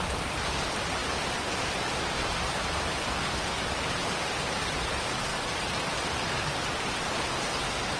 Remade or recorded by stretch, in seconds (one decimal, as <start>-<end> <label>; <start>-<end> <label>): 0.0-1.0 recorded; 1.0-2.6 remade; 2.6-4.0 recorded; 4.0-4.6 remade; 4.6-8.0 recorded